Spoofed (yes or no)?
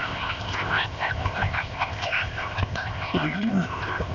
yes